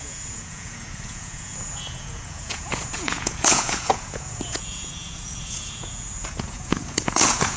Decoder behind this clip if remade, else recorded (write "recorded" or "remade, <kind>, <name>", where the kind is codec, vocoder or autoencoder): remade, vocoder, Vocos